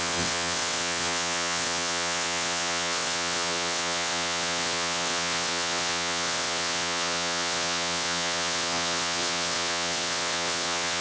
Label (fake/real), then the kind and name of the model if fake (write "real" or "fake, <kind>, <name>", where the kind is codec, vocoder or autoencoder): fake, vocoder, WaveNeXt